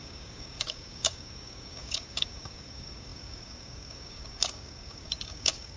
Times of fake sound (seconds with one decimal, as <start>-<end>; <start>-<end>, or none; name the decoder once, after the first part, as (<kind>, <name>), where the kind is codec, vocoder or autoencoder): 0.0-5.8 (codec, DAC)